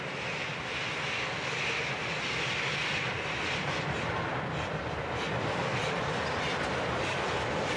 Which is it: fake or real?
real